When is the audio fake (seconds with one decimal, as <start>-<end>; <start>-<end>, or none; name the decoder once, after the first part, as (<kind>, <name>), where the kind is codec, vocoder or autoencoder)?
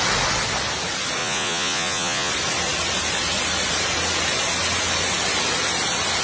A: 1.2-2.3 (vocoder, Vocos)